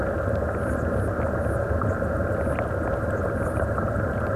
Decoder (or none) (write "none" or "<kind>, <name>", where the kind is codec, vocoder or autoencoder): none